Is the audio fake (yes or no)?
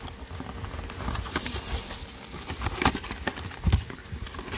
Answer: no